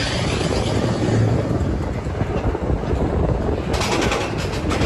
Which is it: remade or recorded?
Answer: recorded